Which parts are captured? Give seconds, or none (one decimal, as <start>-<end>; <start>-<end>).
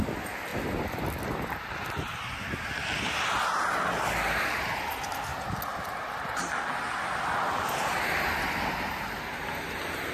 0.0-10.1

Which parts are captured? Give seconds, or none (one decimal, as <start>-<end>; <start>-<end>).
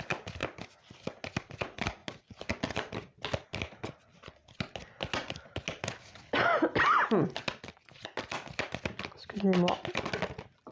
0.0-10.7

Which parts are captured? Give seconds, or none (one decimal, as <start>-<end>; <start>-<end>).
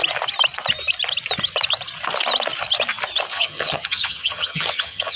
0.0-3.3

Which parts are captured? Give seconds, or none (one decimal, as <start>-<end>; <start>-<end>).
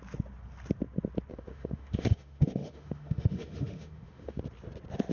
0.0-1.3; 4.4-5.1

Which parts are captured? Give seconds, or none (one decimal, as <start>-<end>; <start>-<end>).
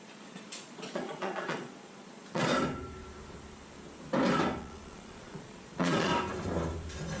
2.5-4.6; 6.1-7.2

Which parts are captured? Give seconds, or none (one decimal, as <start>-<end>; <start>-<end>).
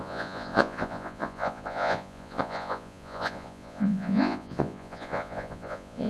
none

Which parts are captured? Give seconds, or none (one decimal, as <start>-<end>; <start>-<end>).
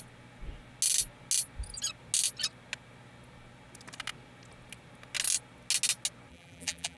0.0-6.3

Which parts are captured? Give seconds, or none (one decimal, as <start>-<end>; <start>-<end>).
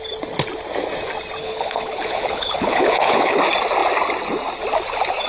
0.0-1.4; 3.4-5.3